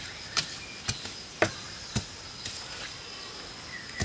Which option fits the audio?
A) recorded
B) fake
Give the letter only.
A